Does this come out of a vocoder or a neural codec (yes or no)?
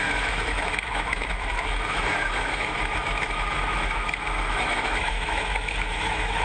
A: yes